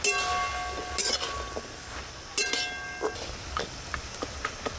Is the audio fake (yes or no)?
no